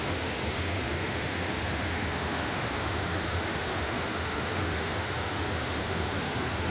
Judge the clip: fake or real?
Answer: fake